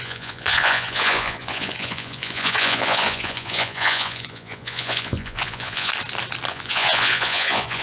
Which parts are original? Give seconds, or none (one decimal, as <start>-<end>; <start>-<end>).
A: 5.9-6.5